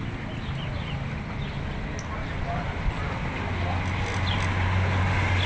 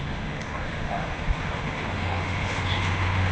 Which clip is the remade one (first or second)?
second